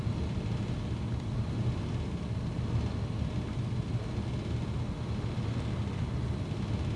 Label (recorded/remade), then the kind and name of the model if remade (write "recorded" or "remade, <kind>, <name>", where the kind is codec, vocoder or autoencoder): recorded